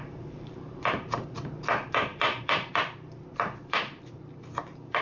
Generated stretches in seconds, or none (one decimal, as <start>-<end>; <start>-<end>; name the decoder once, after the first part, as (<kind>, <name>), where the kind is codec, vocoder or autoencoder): 0.0-5.0 (vocoder, BigVGAN v2)